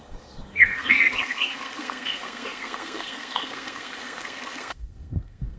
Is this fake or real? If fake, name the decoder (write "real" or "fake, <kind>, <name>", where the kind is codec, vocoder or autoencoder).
fake, codec, SNAC